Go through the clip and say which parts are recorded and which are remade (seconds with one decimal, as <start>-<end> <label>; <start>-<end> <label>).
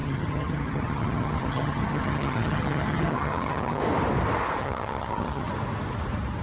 0.0-3.8 remade; 3.8-4.6 recorded; 4.6-5.5 remade; 5.5-6.4 recorded